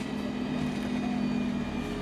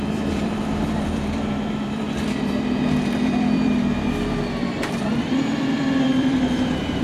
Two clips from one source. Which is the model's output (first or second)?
second